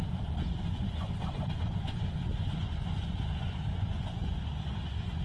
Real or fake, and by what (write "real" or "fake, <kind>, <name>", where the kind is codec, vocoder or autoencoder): fake, vocoder, Vocos